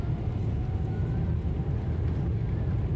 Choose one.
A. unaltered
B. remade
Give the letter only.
A